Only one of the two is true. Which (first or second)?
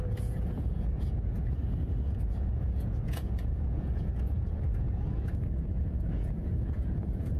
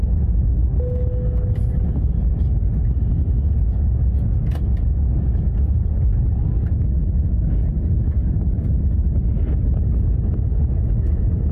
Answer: second